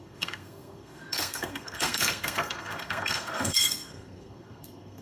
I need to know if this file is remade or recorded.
remade